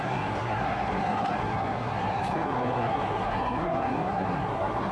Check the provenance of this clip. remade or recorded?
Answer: remade